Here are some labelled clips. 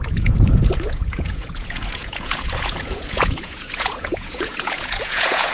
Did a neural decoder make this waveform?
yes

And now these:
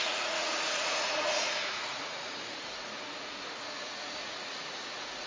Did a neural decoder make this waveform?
yes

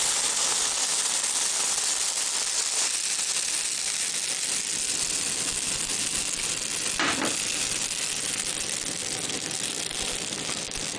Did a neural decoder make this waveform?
no